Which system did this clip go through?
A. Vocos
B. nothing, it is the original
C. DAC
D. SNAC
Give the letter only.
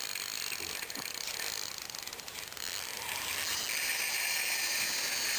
B